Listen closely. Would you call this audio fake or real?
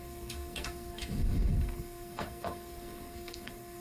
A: fake